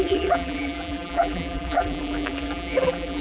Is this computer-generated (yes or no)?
yes